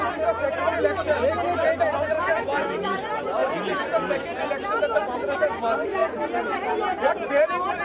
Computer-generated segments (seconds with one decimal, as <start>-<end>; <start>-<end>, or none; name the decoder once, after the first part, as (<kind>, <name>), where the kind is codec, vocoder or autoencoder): none